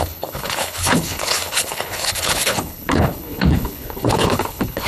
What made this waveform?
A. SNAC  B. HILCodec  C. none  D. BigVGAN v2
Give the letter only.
B